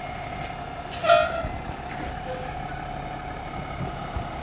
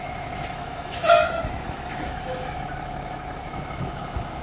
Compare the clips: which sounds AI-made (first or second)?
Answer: second